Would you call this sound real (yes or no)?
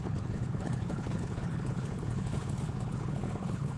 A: no